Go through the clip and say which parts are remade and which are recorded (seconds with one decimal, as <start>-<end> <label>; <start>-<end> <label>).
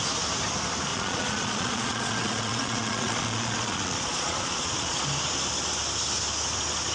0.0-0.9 recorded; 0.9-5.0 remade; 5.0-6.9 recorded